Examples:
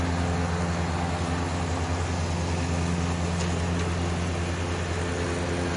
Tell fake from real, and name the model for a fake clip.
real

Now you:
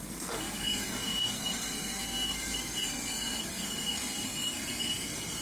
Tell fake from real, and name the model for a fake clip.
fake, codec, SNAC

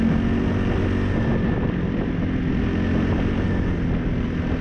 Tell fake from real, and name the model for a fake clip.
real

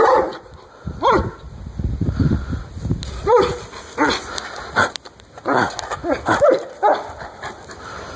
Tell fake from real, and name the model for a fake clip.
real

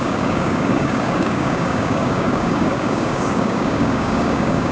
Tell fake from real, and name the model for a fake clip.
fake, codec, DAC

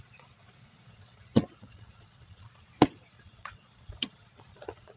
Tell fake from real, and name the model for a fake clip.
fake, vocoder, Vocos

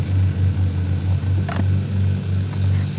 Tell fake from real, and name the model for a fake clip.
real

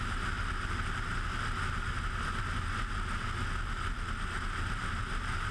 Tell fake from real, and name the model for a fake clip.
real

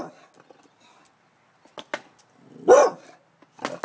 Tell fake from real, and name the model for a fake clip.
real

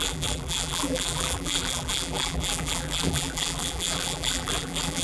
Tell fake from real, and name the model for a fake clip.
fake, vocoder, BigVGAN v2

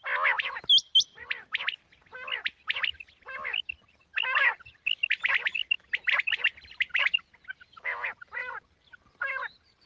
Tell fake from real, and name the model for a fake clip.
real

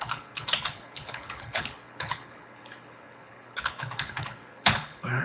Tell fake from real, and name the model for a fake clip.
fake, codec, HILCodec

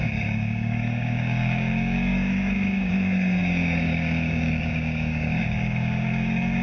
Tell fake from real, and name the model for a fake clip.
fake, codec, DAC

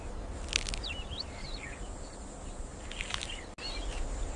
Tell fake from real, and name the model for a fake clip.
real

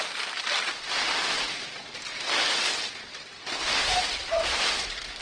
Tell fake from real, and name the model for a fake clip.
real